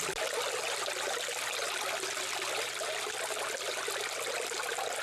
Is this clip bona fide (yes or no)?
yes